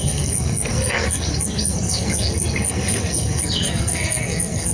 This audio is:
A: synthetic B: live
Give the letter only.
A